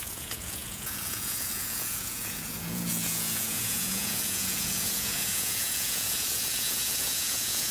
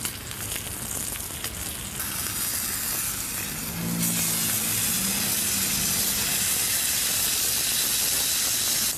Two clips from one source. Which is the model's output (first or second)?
first